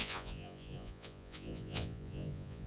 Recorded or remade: remade